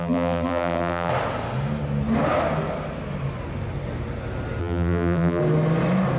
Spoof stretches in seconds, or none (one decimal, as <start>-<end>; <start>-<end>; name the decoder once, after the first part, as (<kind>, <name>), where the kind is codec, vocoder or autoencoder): 0.0-1.1 (vocoder, BigVGAN v2); 4.6-5.4